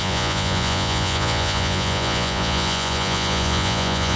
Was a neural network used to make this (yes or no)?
yes